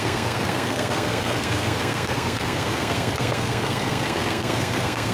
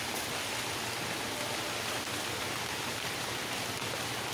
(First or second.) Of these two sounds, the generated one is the first